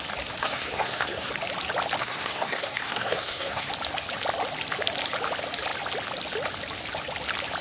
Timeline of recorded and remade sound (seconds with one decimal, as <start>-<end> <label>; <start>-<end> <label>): 0.0-0.4 recorded; 0.4-1.3 remade; 1.3-2.0 recorded; 2.0-3.7 remade; 3.7-7.6 recorded